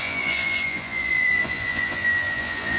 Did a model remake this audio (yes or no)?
yes